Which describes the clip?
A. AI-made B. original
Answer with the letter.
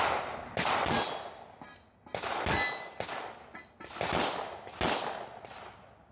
B